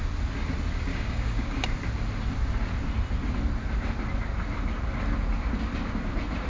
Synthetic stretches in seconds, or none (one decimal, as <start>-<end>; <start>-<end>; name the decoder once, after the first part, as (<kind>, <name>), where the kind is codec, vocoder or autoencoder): 0.9-1.6 (codec, DAC)